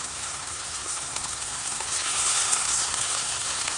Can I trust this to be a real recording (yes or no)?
no